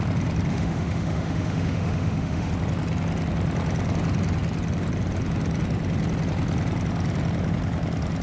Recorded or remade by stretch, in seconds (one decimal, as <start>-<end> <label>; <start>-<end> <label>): 0.0-0.5 recorded; 0.5-2.5 remade; 2.5-8.2 recorded